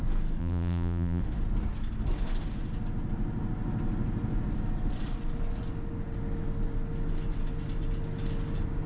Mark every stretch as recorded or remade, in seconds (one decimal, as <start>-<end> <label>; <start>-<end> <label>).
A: 0.0-0.4 recorded; 0.4-1.2 remade; 1.2-8.9 recorded

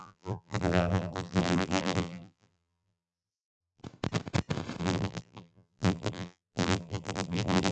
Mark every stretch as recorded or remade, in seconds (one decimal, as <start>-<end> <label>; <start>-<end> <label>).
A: 0.0-3.8 remade; 3.8-4.8 recorded; 4.8-7.7 remade